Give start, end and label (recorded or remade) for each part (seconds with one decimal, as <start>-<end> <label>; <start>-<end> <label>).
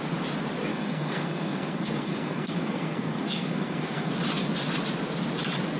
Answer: 0.0-0.7 recorded; 0.7-4.1 remade; 4.1-5.8 recorded